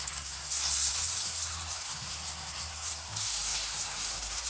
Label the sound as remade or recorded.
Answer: remade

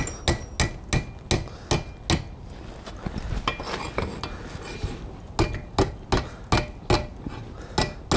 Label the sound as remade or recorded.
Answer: recorded